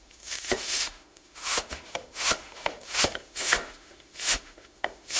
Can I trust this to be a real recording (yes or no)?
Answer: no